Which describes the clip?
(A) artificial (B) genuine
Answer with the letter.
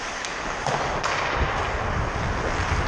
B